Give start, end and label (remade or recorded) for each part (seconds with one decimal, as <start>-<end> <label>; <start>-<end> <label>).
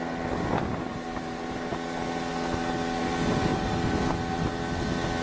0.0-0.9 recorded; 0.9-1.7 remade; 1.7-3.5 recorded; 3.5-4.1 remade; 4.1-5.2 recorded